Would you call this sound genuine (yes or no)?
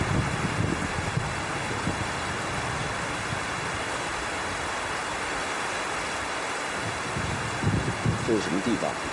yes